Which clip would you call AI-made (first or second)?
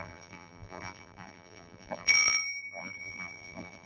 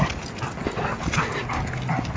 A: first